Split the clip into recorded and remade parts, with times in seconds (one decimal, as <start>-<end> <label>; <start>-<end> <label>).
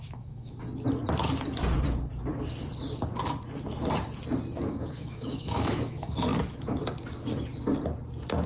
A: 0.0-0.7 remade; 0.7-4.7 recorded; 4.7-6.3 remade; 6.3-8.5 recorded